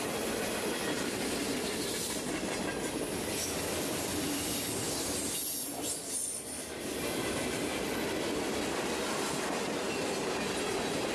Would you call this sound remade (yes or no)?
no